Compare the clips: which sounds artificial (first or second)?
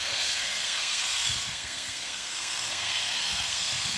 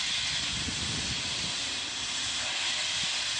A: first